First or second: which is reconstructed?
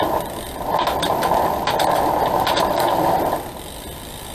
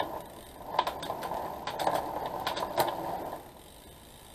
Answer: first